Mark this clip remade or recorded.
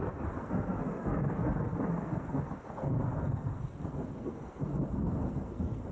remade